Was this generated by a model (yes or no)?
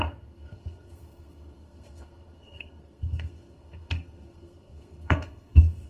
yes